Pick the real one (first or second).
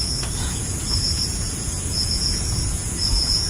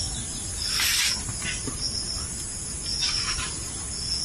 second